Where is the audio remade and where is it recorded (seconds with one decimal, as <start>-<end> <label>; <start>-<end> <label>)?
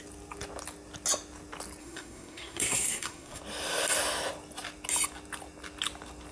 0.0-1.8 recorded; 1.8-3.4 remade; 3.4-6.3 recorded